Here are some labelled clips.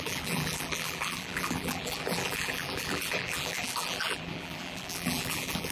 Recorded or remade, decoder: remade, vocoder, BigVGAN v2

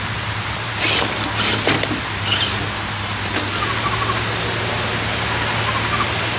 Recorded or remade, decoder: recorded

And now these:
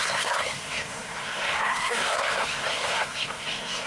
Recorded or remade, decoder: remade, codec, SNAC